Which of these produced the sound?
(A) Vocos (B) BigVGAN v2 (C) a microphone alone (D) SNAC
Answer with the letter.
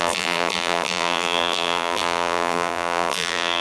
B